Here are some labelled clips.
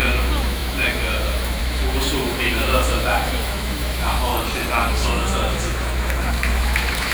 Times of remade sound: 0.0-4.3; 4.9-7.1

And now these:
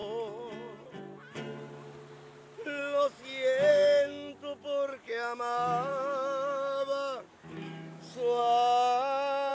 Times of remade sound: 3.7-4.3; 5.9-8.0

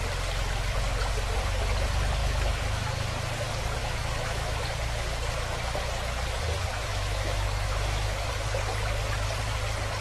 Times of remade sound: 2.2-3.3; 3.8-4.6; 6.7-8.3

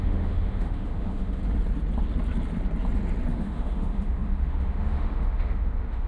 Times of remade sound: 0.0-1.4; 3.3-6.1

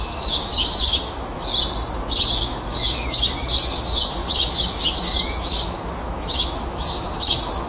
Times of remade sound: 0.0-1.5; 2.2-7.7

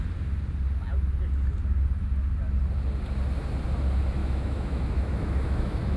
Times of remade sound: 4.2-6.0

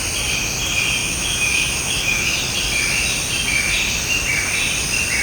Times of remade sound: 1.0-2.4